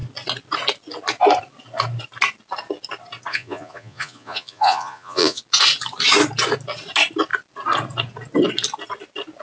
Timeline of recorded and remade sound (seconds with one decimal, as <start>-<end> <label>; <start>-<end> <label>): 0.0-3.3 recorded; 3.3-5.4 remade; 5.4-9.4 recorded